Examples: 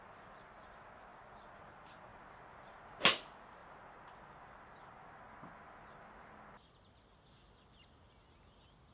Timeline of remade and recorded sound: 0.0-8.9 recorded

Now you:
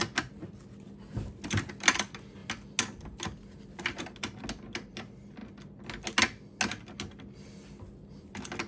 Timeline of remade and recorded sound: 0.0-8.7 recorded

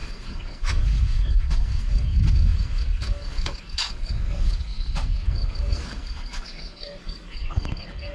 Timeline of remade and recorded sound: 0.0-8.1 remade

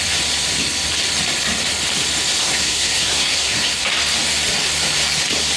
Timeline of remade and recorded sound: 0.0-2.4 recorded; 2.4-3.8 remade; 3.8-5.6 recorded

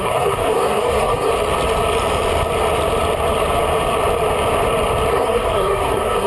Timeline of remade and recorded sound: 0.0-1.3 remade; 1.3-5.1 recorded; 5.1-6.3 remade